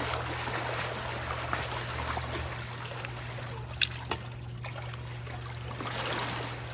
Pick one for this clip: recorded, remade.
recorded